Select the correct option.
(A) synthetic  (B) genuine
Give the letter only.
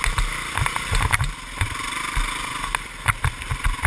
B